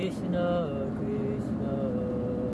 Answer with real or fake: real